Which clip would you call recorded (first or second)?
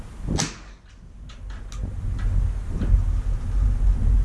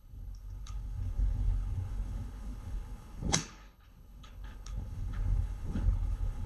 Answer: first